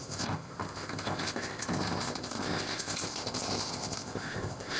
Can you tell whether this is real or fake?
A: fake